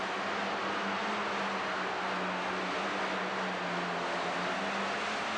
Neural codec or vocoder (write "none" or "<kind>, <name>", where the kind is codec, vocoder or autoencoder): none